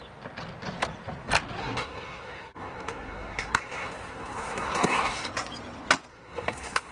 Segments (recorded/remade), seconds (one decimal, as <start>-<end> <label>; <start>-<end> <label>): 0.0-1.6 recorded; 1.6-5.3 remade; 5.3-6.1 recorded; 6.1-6.9 remade

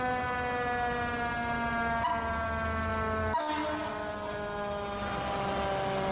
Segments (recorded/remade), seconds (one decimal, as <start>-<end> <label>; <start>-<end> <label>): 0.0-6.1 recorded

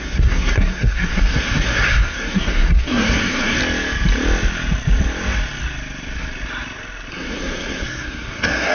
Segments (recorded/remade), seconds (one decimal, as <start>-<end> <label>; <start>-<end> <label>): 0.0-3.6 remade; 3.6-7.1 recorded; 7.1-8.7 remade

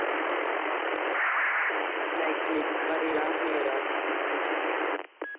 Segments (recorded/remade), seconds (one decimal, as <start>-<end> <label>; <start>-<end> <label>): 0.0-1.6 recorded; 1.6-4.1 remade; 4.1-5.4 recorded

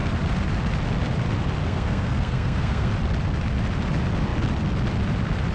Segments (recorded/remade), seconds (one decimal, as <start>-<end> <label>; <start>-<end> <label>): 0.0-1.6 recorded; 1.6-2.9 remade; 2.9-5.5 recorded